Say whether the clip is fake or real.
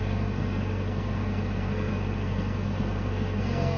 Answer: fake